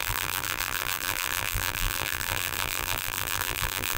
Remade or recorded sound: remade